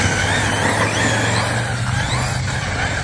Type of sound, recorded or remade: recorded